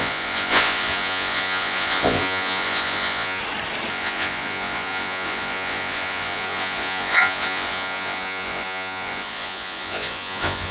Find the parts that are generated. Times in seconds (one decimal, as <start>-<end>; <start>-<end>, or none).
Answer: 0.0-3.4; 3.9-10.7

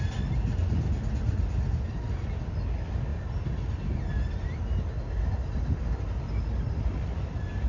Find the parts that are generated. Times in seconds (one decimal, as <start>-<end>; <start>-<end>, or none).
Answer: none

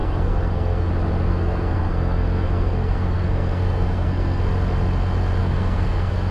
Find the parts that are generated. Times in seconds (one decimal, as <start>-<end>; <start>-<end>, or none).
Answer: 0.0-0.9; 1.3-4.4; 5.4-6.3

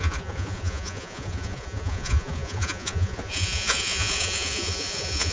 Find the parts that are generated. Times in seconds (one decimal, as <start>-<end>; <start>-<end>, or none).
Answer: 0.0-5.3